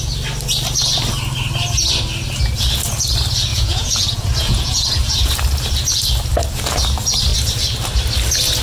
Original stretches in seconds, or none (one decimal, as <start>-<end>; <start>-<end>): 0.0-3.5; 5.3-8.6